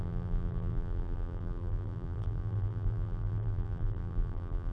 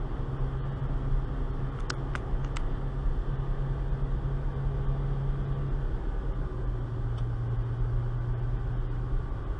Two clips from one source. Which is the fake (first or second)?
first